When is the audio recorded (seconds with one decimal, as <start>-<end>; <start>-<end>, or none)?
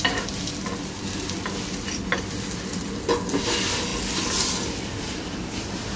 0.0-6.0